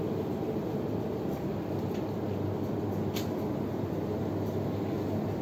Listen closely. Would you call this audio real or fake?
real